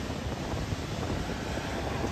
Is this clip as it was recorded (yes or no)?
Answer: yes